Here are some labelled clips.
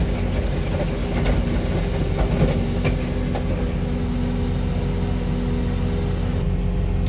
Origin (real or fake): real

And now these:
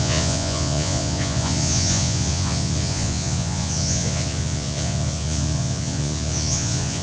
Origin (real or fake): fake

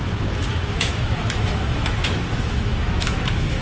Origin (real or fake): fake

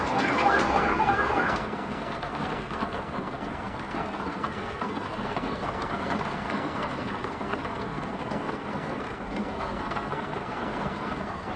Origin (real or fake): fake